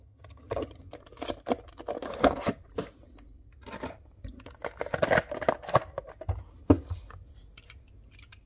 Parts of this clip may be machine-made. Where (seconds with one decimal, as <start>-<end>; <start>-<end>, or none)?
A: 0.0-0.8